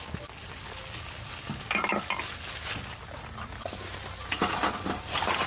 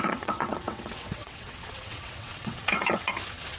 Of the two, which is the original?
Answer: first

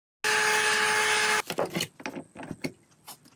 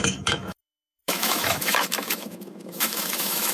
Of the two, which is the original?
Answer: first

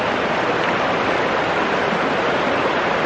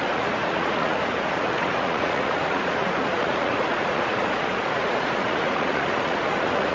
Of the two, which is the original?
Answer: first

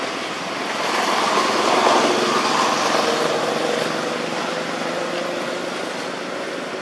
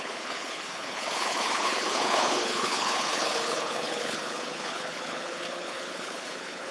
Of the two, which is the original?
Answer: first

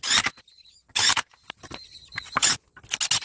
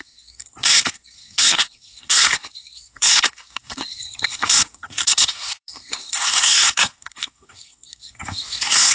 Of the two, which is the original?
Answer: first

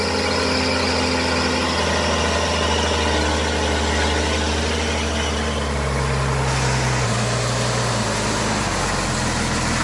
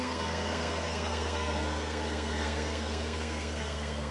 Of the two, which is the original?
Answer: first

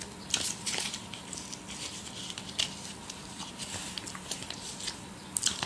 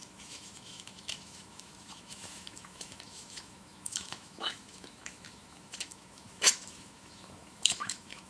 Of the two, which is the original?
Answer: first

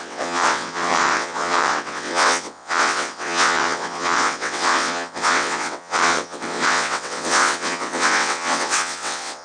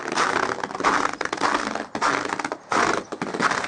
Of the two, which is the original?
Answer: second